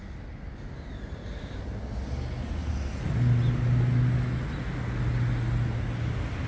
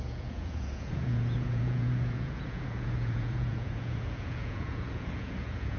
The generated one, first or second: second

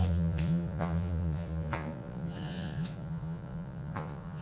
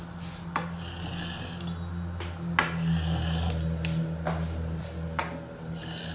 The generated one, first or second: first